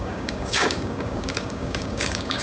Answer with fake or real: fake